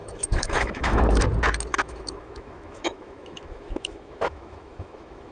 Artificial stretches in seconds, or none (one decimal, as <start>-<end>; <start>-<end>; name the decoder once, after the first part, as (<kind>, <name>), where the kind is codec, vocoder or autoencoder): 0.0-1.2 (autoencoder, DAC-VAE); 1.7-5.3